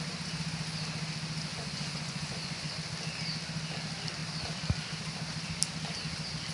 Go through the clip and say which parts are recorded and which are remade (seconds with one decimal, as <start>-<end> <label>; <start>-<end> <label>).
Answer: 0.0-1.5 recorded; 1.5-2.7 remade; 2.7-6.5 recorded